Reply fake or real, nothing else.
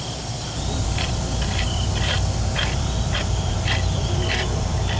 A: fake